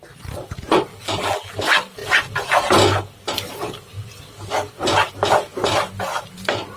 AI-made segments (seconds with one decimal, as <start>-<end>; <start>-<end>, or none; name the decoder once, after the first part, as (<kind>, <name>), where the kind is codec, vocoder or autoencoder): 0.9-1.5 (vocoder, BigVGAN v2)